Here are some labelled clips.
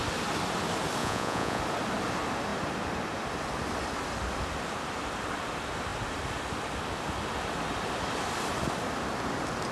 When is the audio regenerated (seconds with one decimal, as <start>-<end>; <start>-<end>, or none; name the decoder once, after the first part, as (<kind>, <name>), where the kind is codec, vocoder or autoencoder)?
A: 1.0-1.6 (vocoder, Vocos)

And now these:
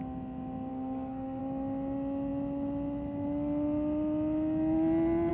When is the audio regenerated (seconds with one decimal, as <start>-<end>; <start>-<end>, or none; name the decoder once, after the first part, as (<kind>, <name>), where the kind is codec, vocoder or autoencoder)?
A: 0.7-1.4 (codec, SNAC)

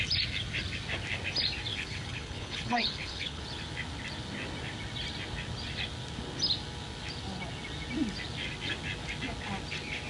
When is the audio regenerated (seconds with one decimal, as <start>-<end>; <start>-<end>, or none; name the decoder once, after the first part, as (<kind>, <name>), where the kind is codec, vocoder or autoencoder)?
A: 1.7-3.4 (codec, HILCodec)